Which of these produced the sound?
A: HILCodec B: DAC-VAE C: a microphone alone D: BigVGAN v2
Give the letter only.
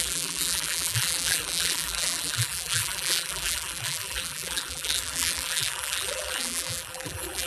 D